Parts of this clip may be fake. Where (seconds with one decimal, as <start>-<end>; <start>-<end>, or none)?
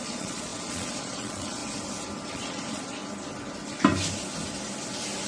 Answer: 0.0-1.6; 2.3-3.0